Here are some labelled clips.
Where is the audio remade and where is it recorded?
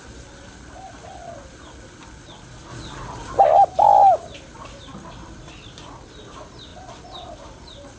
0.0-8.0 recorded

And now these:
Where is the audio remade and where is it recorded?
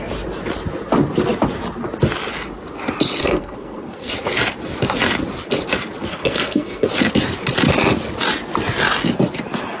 0.0-3.2 recorded; 3.2-4.1 remade; 4.1-6.1 recorded; 6.1-6.9 remade; 6.9-9.8 recorded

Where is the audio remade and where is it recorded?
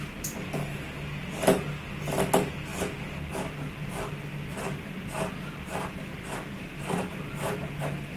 0.0-8.2 recorded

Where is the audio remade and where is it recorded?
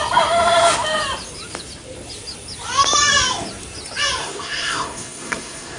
0.0-4.2 recorded; 4.2-5.8 remade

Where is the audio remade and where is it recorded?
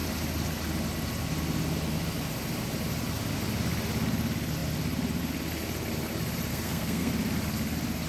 0.0-6.5 recorded; 6.5-7.1 remade; 7.1-8.1 recorded